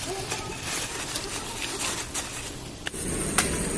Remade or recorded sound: recorded